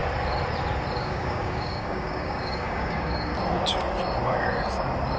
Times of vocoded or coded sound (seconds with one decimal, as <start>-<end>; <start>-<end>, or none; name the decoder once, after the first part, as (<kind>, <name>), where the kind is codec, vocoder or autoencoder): 1.0-3.3 (codec, DAC)